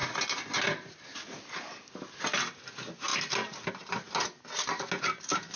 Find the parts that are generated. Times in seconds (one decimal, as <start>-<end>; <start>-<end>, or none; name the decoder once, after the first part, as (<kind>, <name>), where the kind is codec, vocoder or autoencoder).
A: none

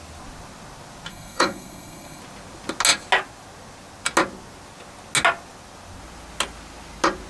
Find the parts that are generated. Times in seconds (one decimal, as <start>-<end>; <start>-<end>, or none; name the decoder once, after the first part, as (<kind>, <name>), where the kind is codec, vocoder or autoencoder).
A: 1.1-2.2 (codec, SNAC)

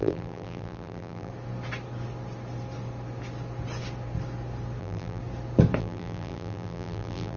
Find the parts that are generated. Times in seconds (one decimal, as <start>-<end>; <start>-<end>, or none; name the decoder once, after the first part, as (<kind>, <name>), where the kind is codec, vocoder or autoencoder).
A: 0.0-1.3 (vocoder, BigVGAN v2); 4.8-5.2; 5.8-7.4

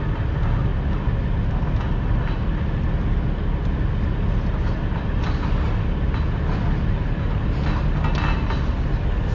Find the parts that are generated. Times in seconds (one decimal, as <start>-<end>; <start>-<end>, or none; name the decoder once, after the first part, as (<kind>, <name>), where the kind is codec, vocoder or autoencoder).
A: none

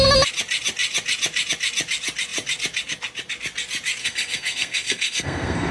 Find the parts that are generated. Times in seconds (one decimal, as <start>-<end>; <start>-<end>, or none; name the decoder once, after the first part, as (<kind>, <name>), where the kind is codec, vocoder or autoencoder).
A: 4.0-5.7 (codec, SNAC)

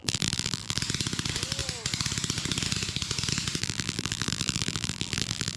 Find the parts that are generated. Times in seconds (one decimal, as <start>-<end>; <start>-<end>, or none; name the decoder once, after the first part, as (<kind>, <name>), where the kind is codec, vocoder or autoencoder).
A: 0.0-0.8 (vocoder, BigVGAN v2); 3.6-5.6

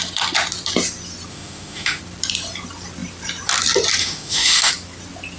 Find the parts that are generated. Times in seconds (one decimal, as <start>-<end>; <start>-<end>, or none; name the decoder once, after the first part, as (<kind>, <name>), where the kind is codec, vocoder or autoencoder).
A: 1.3-2.0 (autoencoder, DAC-VAE); 4.0-4.7

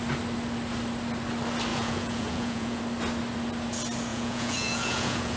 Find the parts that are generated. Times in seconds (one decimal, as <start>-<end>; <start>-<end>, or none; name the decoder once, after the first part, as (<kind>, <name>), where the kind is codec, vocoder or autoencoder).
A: 1.7-2.8 (vocoder, Vocos); 4.1-5.4